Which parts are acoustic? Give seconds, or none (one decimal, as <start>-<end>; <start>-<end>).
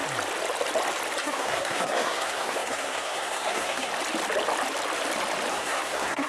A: 0.0-1.2; 3.9-5.5